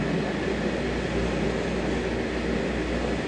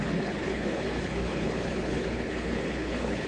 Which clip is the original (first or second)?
first